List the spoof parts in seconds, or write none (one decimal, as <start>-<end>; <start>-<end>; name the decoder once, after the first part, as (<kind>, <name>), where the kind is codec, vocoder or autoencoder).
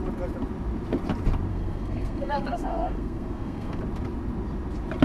1.5-3.8 (codec, SNAC)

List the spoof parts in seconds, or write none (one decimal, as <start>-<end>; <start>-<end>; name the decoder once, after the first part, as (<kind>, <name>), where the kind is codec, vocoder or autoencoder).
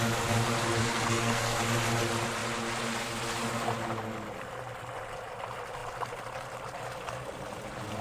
0.8-1.6 (codec, SNAC)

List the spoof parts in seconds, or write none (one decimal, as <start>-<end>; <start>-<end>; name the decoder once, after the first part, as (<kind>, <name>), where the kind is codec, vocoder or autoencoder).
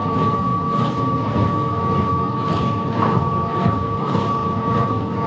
0.0-5.3 (codec, SNAC)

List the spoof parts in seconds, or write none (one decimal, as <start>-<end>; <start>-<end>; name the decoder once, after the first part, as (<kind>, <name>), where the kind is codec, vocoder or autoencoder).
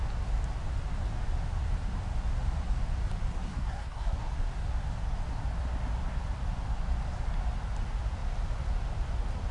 3.3-4.3 (codec, SNAC)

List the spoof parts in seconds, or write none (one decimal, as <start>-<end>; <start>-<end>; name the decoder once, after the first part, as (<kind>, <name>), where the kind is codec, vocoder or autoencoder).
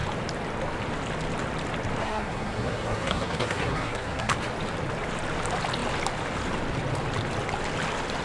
2.0-4.3 (codec, SNAC)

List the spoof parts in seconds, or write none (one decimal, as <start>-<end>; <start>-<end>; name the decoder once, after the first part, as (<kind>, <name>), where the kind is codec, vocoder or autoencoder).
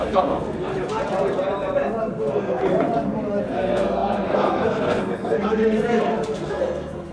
0.0-0.7 (codec, SNAC); 2.0-2.6; 3.4-7.1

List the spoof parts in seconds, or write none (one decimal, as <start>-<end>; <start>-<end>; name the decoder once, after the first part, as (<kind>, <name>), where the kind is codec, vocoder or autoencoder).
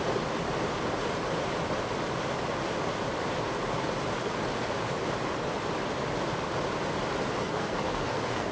7.4-8.5 (codec, SNAC)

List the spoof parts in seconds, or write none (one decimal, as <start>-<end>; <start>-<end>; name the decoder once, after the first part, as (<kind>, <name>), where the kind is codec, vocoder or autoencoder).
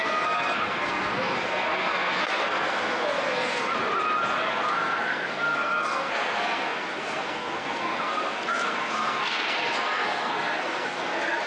0.0-3.7 (codec, SNAC); 4.5-11.5